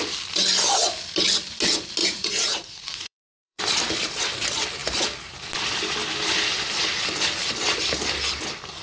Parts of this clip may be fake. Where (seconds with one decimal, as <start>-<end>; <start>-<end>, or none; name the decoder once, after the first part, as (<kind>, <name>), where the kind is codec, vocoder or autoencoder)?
2.0-3.6 (vocoder, Vocos)